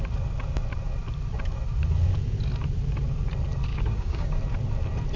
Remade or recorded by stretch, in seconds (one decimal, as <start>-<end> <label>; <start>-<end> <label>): 0.0-3.7 recorded; 3.7-4.4 remade; 4.4-5.2 recorded